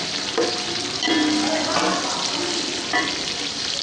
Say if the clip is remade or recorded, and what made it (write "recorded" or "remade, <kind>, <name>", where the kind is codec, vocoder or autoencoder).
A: recorded